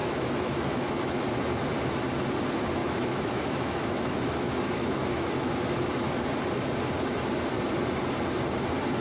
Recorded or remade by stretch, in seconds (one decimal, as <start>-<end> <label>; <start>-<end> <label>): 0.0-1.2 remade; 1.2-2.8 recorded; 2.8-5.5 remade; 5.5-9.0 recorded